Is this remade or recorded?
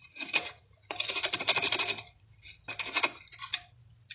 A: remade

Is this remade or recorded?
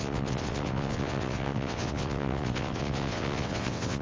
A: remade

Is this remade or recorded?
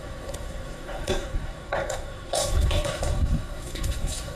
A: remade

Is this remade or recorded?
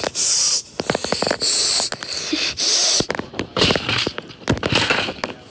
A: recorded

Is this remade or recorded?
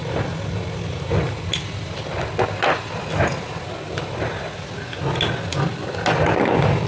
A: recorded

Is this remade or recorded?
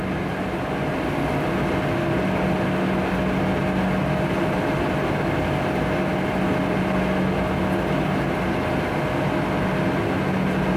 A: recorded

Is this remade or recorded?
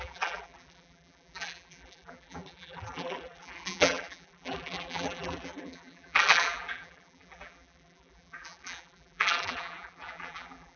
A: remade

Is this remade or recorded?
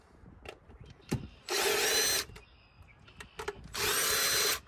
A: recorded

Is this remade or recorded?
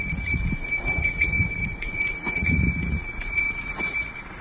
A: remade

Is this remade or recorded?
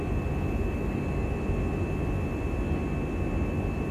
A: recorded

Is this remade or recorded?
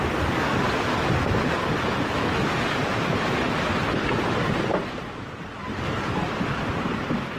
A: recorded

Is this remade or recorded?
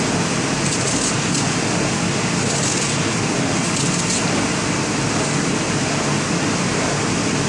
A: recorded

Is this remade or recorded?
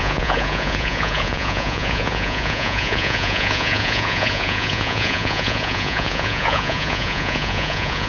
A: remade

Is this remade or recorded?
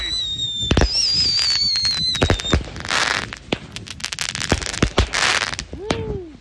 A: recorded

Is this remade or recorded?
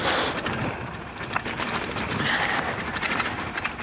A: recorded